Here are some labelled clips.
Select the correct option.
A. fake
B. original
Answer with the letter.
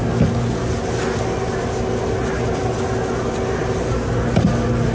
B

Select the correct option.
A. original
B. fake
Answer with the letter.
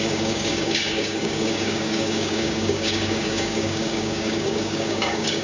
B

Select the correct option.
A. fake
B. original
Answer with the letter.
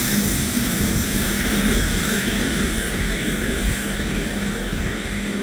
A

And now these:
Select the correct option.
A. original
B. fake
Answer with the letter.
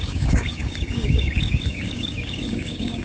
B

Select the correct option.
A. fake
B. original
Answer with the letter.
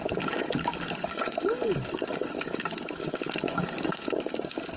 A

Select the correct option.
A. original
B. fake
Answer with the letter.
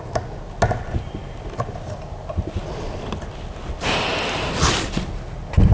A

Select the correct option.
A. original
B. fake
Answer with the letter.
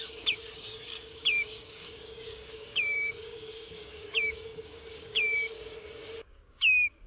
B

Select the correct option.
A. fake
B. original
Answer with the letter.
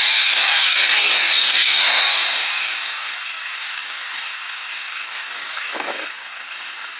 A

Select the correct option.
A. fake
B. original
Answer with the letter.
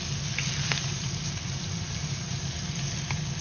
B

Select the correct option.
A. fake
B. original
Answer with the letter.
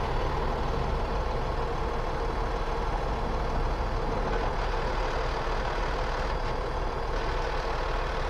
B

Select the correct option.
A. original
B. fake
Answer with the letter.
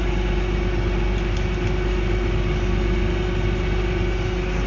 A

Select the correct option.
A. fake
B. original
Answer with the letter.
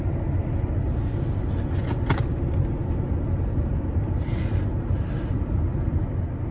B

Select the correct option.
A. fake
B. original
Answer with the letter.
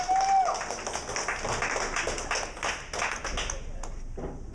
B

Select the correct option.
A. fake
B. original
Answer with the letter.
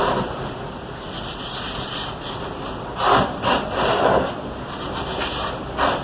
B